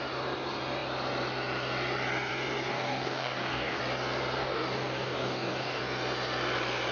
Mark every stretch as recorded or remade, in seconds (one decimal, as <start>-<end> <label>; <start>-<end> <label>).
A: 0.0-2.7 recorded; 2.7-3.8 remade; 3.8-4.4 recorded; 4.4-5.8 remade; 5.8-6.9 recorded